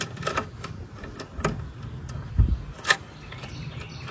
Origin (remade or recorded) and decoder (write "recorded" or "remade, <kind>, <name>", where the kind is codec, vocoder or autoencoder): recorded